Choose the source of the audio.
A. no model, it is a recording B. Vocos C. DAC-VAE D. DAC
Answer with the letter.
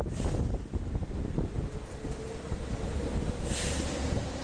A